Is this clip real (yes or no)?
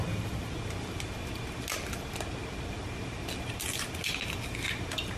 yes